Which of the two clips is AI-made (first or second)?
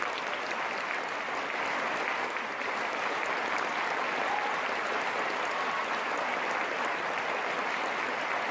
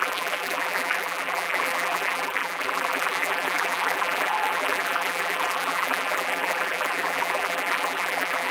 second